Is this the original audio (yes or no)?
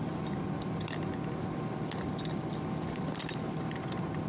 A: yes